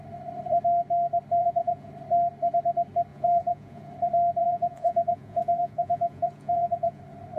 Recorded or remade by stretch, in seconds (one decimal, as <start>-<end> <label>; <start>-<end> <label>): 0.0-1.4 recorded; 1.4-1.9 remade; 1.9-3.1 recorded; 3.1-3.9 remade; 3.9-4.4 recorded; 4.4-7.0 remade; 7.0-7.4 recorded